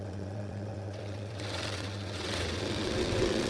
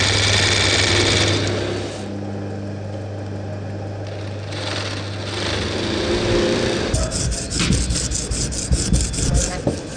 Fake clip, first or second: first